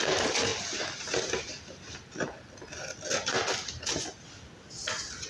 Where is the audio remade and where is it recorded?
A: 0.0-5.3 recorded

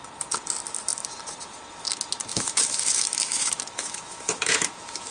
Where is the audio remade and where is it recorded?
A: 0.0-2.3 recorded; 2.3-5.1 remade

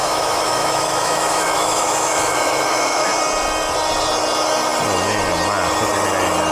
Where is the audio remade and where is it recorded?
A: 0.0-3.1 remade; 3.1-6.5 recorded